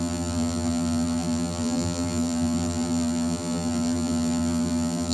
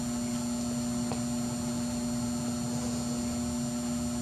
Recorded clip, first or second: second